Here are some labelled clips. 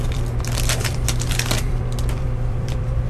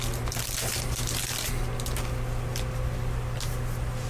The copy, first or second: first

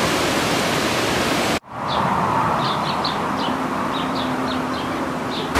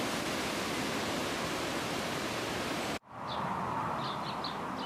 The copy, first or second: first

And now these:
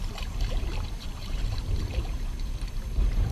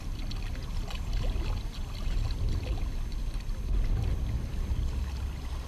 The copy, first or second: first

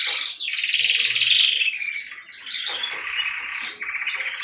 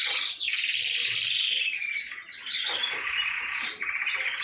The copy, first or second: second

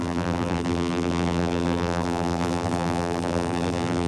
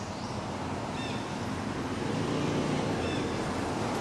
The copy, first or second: first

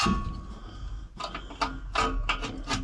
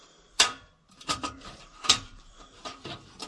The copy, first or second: second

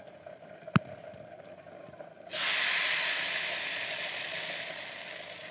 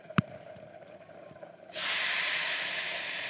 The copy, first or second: second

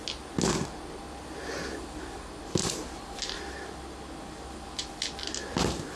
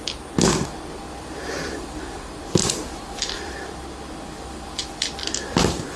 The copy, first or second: second